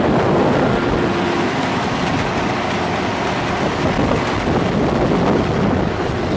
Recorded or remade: recorded